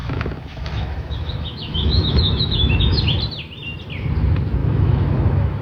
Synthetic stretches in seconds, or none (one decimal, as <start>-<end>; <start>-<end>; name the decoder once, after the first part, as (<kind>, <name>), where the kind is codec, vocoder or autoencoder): 0.0-3.0 (autoencoder, DAC-VAE); 4.6-5.6